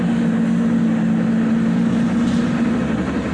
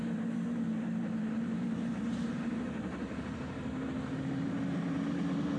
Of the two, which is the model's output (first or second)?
second